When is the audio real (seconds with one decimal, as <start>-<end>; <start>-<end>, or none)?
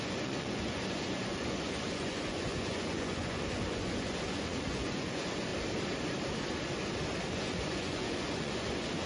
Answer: 5.5-7.3